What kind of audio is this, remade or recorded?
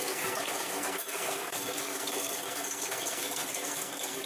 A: remade